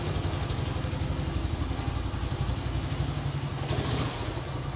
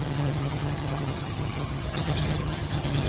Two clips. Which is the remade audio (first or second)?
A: second